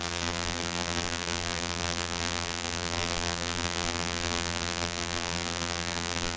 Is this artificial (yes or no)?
yes